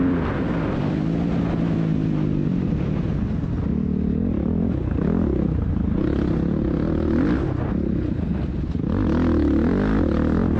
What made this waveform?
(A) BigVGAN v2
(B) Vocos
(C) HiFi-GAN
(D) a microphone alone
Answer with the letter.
D